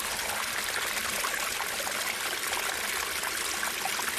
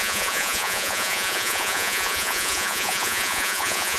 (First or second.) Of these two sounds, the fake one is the second